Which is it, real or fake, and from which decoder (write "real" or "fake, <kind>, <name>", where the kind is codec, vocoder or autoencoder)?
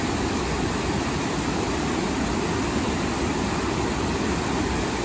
real